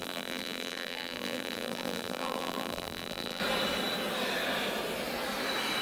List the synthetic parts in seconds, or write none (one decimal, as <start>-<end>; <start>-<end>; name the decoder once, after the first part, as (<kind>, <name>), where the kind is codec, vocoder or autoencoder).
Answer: 0.0-3.4 (vocoder, BigVGAN v2)